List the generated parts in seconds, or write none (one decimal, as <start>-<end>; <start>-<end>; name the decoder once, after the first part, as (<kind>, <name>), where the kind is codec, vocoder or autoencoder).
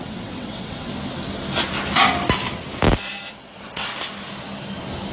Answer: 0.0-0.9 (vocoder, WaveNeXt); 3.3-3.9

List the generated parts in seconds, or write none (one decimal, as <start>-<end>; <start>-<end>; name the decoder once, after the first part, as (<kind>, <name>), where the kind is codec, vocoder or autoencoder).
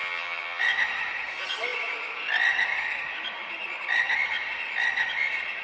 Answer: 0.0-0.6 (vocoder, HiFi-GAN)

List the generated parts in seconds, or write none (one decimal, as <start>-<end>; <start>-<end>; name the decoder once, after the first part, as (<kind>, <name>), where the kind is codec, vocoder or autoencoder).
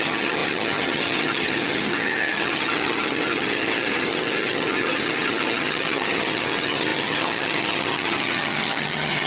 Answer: 0.0-9.3 (vocoder, HiFi-GAN)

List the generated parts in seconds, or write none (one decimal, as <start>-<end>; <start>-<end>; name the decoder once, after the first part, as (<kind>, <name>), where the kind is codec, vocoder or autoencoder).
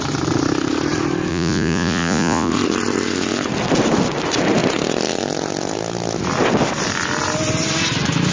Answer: 1.3-2.5 (vocoder, Vocos)